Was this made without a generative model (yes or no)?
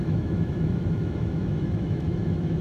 no